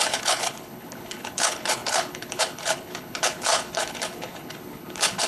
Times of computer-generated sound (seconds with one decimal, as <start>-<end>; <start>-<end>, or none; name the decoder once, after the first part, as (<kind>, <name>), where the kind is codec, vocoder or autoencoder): 0.0-5.3 (codec, HILCodec)